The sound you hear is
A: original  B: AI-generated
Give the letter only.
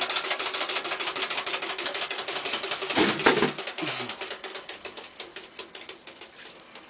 A